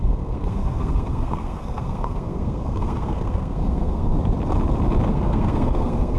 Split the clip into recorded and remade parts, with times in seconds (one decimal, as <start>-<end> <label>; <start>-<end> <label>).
0.0-4.1 remade; 4.1-5.1 recorded; 5.1-6.2 remade